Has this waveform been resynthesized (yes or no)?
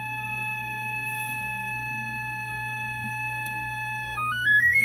yes